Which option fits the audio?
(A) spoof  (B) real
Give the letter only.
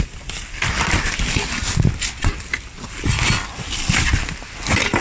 B